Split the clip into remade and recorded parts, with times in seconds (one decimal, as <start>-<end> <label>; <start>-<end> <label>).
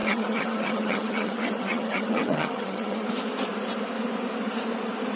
0.0-3.1 remade; 3.1-5.2 recorded